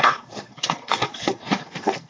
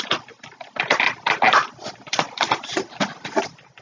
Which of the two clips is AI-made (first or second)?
first